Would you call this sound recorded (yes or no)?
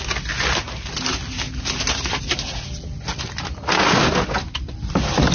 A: yes